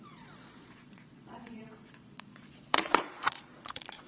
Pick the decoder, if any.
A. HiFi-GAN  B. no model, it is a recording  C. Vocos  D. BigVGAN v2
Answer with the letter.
C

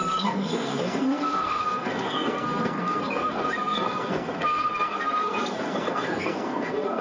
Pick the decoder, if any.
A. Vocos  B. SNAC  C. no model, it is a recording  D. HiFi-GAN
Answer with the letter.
B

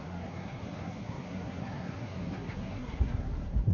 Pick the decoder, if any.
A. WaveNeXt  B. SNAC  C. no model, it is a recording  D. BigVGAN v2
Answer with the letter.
B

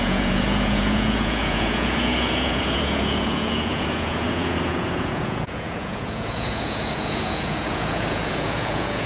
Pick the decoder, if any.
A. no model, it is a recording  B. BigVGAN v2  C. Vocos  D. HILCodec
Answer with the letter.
C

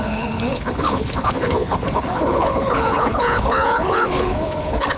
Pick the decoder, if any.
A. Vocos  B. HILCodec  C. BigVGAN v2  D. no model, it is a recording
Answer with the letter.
B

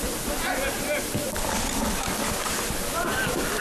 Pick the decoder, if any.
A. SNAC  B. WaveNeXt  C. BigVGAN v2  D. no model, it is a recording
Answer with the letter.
D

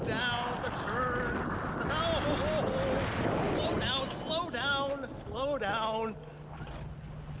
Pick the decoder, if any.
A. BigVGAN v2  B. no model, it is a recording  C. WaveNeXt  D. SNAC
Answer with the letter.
B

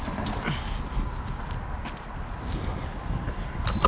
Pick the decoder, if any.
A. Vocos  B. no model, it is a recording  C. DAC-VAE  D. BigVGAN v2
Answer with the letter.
B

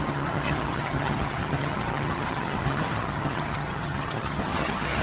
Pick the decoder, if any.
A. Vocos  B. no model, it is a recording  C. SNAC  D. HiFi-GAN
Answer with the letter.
D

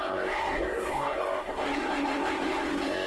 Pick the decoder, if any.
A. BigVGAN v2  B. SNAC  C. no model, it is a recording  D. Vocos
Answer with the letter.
B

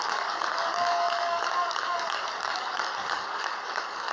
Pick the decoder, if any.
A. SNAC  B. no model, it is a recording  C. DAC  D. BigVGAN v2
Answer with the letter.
C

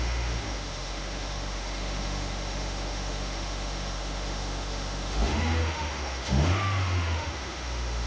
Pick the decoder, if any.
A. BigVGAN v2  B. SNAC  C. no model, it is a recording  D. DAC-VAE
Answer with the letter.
D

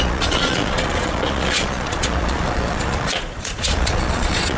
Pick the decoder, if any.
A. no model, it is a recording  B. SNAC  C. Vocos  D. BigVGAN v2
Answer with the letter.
C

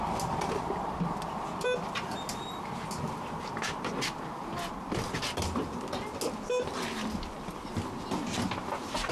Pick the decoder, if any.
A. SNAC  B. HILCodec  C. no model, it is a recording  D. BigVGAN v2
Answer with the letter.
C